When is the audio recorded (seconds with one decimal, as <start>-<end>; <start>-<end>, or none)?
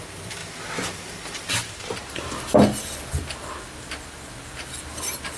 0.0-5.4